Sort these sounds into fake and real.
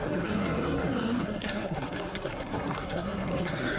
fake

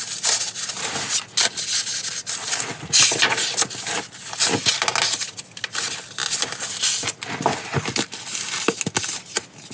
real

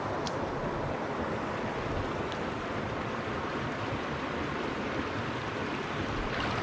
real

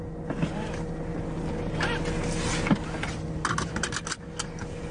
real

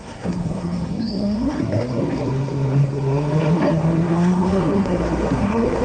fake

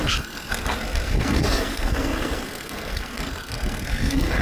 fake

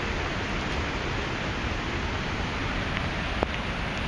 real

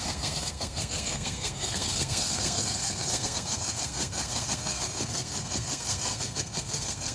fake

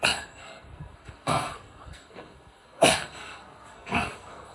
fake